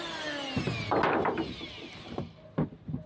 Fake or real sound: real